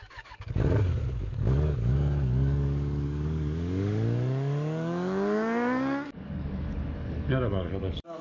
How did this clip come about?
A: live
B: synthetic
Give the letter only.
B